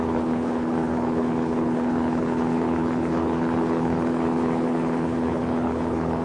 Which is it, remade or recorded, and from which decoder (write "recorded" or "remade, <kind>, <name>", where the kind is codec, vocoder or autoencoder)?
remade, codec, HILCodec